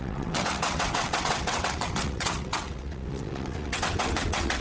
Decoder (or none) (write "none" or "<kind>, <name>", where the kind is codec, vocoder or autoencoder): vocoder, WaveNeXt